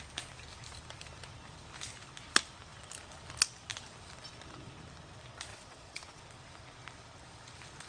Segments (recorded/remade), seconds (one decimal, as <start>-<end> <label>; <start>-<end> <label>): 0.0-5.5 recorded; 5.5-6.2 remade; 6.2-7.9 recorded